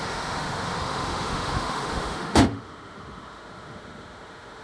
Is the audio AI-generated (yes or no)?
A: yes